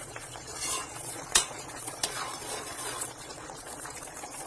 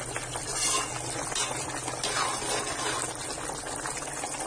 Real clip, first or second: second